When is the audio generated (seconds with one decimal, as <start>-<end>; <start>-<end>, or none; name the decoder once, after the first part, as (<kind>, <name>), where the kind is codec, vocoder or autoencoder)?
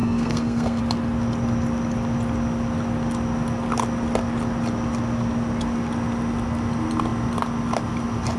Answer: 0.0-0.8 (codec, SNAC)